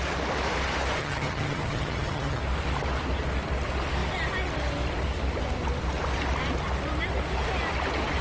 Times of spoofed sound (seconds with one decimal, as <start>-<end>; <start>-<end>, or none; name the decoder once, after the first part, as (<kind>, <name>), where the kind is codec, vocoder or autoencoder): 1.0-2.4 (vocoder, HiFi-GAN)